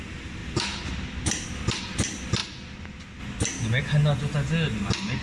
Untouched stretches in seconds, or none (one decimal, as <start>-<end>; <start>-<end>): 0.0-5.2